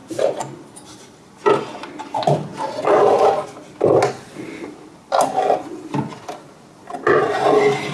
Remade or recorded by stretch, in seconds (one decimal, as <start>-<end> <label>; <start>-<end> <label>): 0.0-1.3 remade; 1.3-7.9 recorded